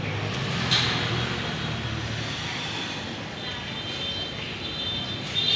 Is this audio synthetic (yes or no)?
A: no